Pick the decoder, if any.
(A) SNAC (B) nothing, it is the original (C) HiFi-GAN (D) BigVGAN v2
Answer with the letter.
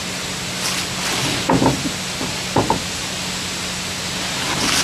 B